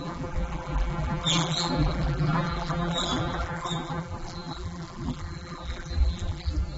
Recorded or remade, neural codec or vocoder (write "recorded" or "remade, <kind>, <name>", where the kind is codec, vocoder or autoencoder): remade, vocoder, BigVGAN v2